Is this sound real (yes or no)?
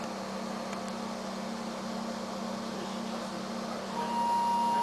yes